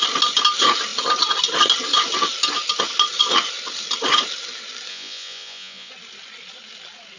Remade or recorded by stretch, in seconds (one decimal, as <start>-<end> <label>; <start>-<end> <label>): 0.0-4.9 recorded; 4.9-5.9 remade; 5.9-7.2 recorded